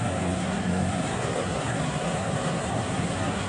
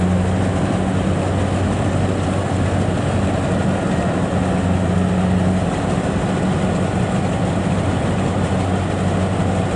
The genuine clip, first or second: second